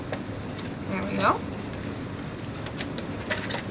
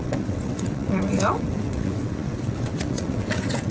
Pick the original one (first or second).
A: first